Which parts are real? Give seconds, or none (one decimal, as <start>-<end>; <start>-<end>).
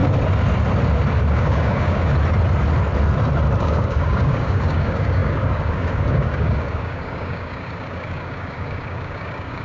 0.0-1.3; 2.1-3.6